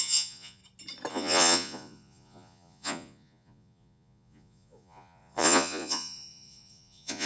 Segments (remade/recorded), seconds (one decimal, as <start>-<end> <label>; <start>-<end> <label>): 0.0-0.6 remade; 0.6-1.1 recorded; 1.1-7.3 remade